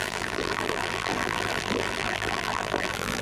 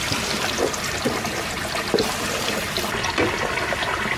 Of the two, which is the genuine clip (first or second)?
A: second